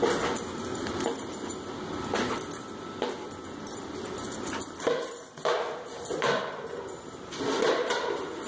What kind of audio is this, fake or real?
real